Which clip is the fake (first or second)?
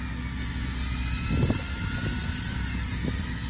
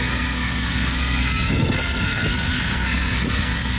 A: second